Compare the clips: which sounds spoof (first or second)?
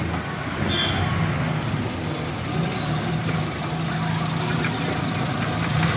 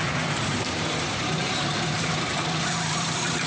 second